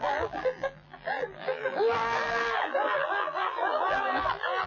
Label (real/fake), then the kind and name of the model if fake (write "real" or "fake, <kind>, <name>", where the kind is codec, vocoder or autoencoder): fake, vocoder, BigVGAN v2